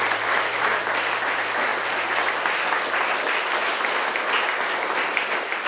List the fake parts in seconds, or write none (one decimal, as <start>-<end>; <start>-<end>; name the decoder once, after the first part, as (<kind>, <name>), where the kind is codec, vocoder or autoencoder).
0.0-1.7 (vocoder, BigVGAN v2); 4.1-5.7